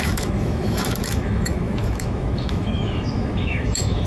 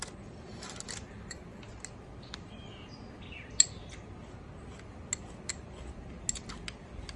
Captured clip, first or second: second